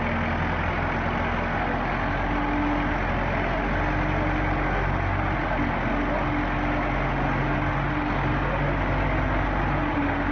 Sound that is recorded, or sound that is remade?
recorded